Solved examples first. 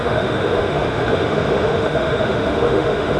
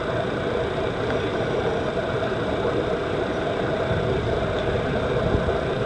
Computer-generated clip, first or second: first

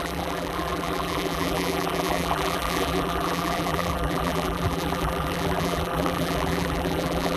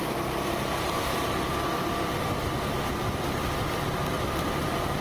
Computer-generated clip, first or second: first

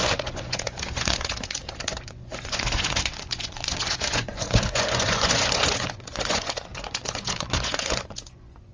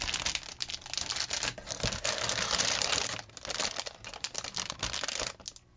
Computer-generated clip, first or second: first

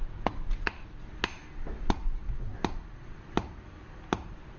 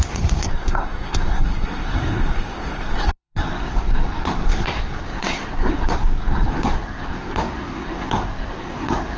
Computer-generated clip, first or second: second